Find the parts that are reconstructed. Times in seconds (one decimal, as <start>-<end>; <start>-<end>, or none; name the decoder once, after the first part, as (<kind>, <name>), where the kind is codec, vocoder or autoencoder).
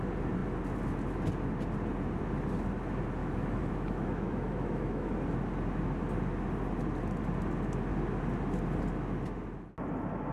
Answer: 3.2-5.1 (autoencoder, DAC-VAE)